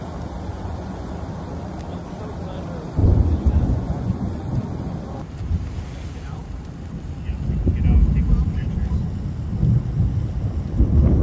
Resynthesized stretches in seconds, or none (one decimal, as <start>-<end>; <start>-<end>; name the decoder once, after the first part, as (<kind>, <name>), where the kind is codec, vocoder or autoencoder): 0.5-1.1 (vocoder, Vocos); 3.0-4.5